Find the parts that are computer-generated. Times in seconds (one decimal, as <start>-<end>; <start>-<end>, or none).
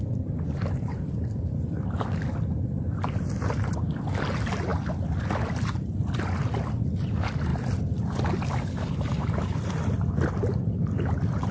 none